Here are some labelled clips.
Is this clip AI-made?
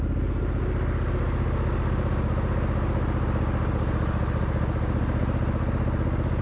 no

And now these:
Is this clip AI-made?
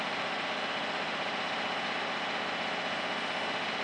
no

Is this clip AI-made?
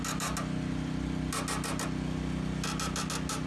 no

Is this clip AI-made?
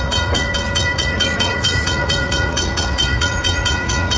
yes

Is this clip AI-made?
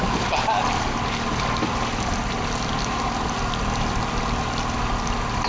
no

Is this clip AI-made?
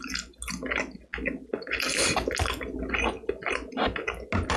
no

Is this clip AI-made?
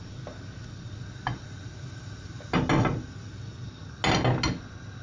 no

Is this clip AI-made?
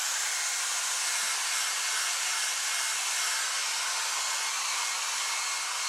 no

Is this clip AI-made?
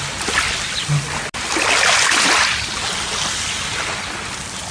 no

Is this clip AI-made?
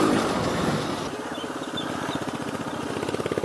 no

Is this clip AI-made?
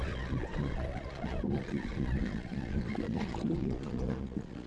yes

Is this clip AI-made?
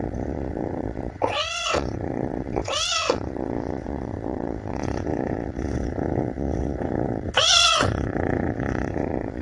yes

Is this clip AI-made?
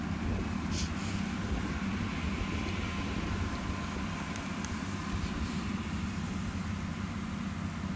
no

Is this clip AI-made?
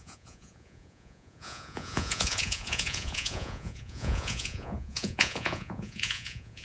yes